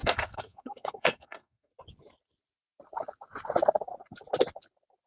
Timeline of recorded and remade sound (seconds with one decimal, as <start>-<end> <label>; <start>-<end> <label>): 0.0-1.7 remade; 1.7-5.1 recorded